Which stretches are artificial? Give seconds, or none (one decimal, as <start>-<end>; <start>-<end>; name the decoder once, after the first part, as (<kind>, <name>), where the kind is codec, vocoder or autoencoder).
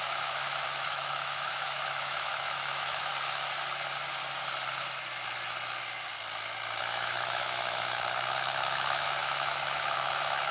0.0-3.1 (autoencoder, DAC-VAE); 6.8-10.5